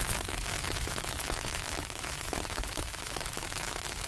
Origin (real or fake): fake